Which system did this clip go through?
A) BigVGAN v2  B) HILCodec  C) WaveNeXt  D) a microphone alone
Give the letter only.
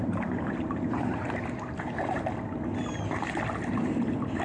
D